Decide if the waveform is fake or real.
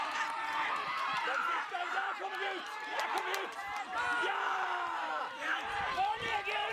fake